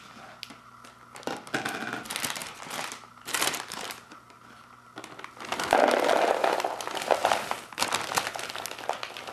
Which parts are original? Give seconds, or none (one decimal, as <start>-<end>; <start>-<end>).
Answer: 0.0-2.4; 4.3-7.2; 7.9-9.3